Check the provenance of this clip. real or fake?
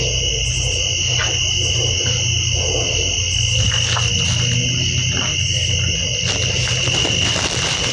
real